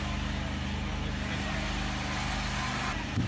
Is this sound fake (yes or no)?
no